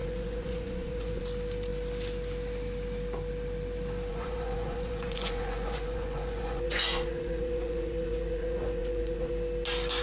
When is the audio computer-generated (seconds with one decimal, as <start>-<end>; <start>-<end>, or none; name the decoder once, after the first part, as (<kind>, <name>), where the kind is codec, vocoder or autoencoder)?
0.0-1.2 (vocoder, Vocos); 4.1-9.3